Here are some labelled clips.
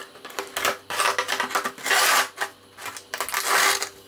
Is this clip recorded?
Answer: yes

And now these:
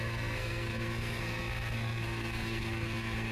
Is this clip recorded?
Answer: no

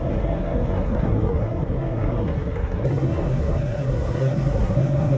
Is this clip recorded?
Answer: no